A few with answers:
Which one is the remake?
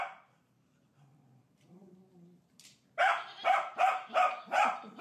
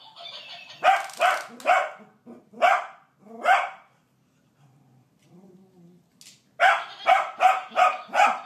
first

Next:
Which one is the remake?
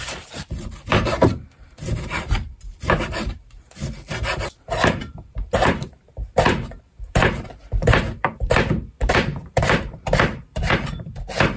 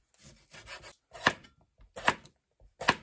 first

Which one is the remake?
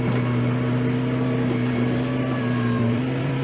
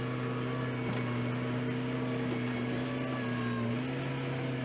first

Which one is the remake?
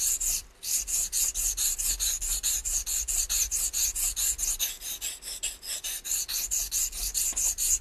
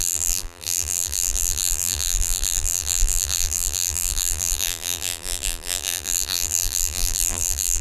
second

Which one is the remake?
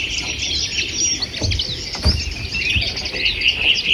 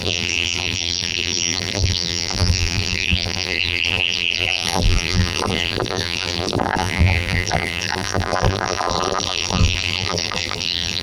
second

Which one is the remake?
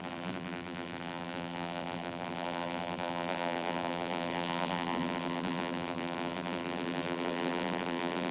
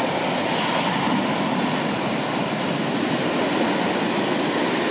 first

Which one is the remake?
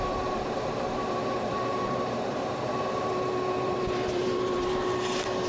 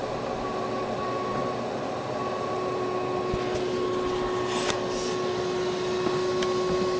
first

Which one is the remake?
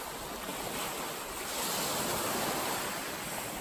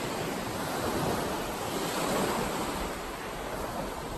first